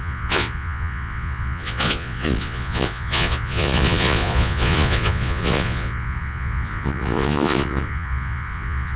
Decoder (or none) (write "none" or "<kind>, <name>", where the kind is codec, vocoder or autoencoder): vocoder, Vocos